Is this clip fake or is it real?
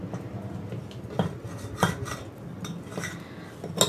real